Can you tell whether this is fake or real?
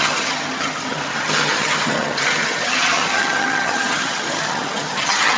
fake